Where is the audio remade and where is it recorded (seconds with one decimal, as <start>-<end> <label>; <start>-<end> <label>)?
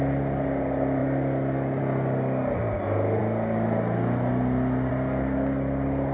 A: 0.0-6.1 recorded